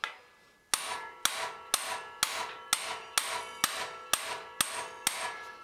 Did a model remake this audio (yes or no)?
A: no